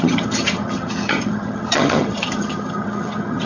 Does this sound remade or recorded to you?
remade